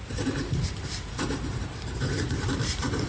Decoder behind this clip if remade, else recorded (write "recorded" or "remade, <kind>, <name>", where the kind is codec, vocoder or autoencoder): remade, vocoder, BigVGAN v2